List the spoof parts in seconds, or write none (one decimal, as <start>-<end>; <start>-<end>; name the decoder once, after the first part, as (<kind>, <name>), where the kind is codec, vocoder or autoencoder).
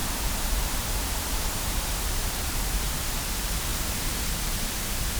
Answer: 0.0-3.1 (vocoder, BigVGAN v2); 3.7-4.3